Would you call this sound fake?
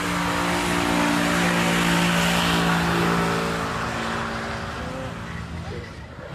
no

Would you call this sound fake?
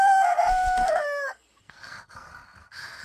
yes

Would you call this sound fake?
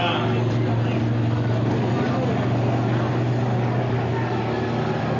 no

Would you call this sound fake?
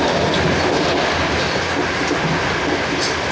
no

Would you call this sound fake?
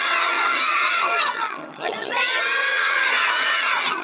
yes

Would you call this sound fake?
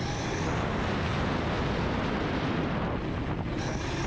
no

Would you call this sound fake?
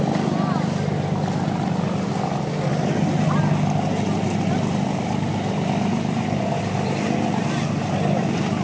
no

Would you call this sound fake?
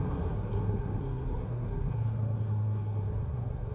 yes